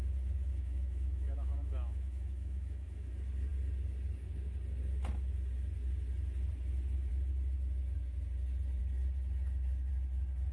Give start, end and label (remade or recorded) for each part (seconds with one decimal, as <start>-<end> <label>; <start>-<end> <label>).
0.0-0.5 recorded; 0.5-3.1 remade; 3.1-10.5 recorded